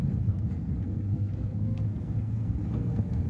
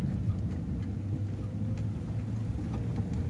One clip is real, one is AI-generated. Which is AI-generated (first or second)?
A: first